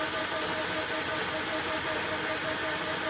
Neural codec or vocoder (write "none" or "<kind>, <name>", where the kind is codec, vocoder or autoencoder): none